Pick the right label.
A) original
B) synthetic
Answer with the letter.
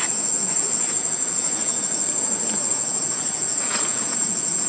B